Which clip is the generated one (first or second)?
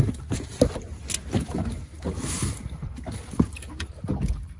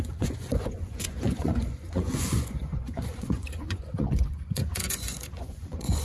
second